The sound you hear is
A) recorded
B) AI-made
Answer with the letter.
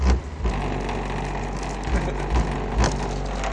A